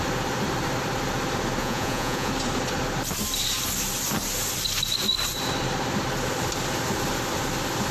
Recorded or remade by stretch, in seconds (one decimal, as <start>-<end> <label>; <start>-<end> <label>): 0.0-1.6 recorded; 1.6-2.3 remade; 2.3-7.9 recorded